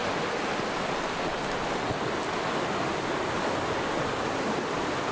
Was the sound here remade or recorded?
recorded